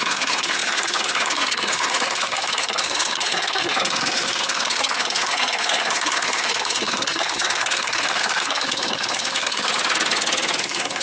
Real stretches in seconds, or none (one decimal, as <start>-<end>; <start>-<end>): 9.7-10.6